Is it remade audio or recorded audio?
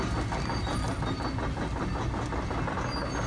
recorded